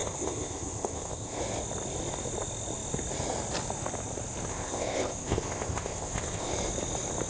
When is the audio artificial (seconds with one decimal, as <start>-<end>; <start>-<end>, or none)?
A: 0.0-1.4; 4.5-6.5

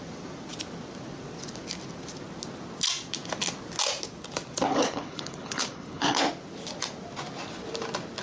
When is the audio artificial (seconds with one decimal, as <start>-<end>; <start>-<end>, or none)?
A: 4.7-6.2

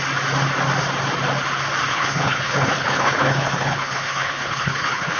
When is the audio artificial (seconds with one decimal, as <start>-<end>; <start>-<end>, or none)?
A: 1.9-5.2